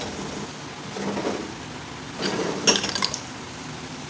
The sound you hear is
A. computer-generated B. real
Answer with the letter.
B